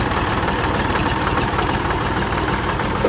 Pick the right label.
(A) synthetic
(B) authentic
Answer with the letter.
A